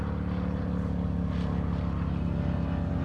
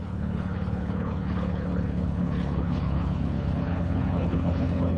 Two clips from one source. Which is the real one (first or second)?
first